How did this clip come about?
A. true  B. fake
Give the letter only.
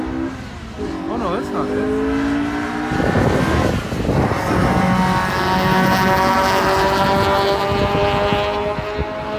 A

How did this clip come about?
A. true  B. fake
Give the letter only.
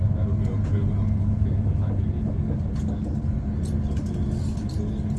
A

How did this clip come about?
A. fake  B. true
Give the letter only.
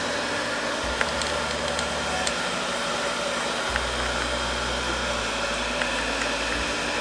B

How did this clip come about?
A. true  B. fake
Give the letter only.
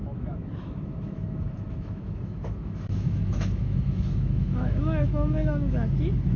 B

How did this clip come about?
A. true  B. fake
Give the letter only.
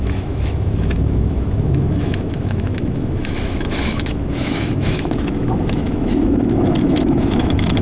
B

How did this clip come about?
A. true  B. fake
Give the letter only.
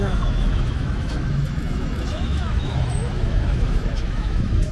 B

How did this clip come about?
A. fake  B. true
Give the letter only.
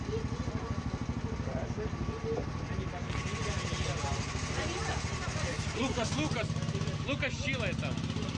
B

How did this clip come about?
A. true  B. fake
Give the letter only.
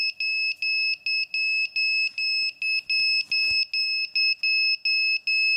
A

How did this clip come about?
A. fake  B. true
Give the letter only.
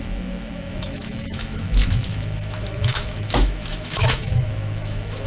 A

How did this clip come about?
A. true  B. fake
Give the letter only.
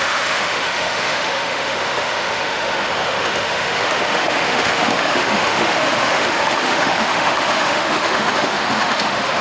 B